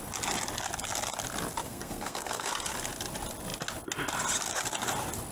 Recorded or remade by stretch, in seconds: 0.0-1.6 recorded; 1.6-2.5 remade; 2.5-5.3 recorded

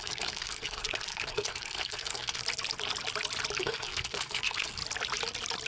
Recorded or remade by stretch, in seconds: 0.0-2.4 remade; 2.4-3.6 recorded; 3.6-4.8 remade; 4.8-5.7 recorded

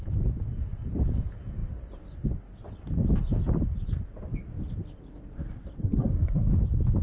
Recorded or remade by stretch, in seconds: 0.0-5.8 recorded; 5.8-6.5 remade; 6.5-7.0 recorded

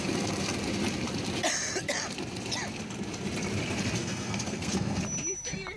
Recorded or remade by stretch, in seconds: 0.0-4.0 recorded; 4.0-5.0 remade; 5.0-5.8 recorded

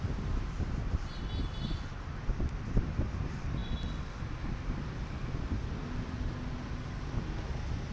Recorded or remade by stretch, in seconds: 0.0-7.9 recorded

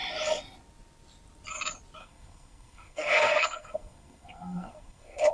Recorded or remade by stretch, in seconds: 0.0-2.0 recorded; 2.0-5.3 remade

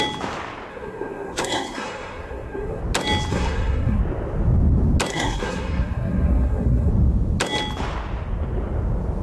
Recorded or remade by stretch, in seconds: 0.0-0.7 recorded; 0.7-2.8 remade; 2.8-3.3 recorded; 3.3-4.0 remade; 4.0-5.1 recorded; 5.1-6.9 remade; 6.9-9.2 recorded